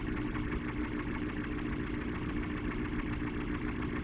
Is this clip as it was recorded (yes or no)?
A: yes